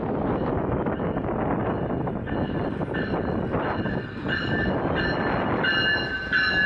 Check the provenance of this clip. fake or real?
real